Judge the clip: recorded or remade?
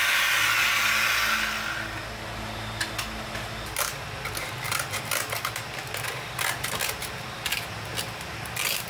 recorded